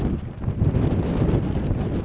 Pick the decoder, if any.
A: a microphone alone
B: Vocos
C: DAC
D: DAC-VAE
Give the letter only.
A